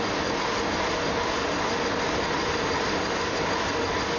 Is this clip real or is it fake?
real